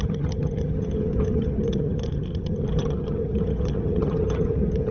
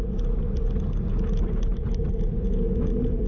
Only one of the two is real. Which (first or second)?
second